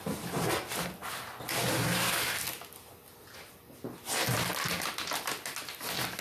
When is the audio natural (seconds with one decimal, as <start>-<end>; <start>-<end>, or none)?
0.0-6.2